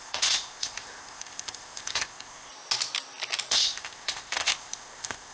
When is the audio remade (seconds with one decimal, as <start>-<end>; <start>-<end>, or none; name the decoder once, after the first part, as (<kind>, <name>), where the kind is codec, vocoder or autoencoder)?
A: 0.0-2.5 (codec, ZipCodec); 3.5-5.3